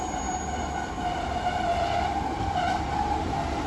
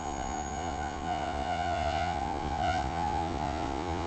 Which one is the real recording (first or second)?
first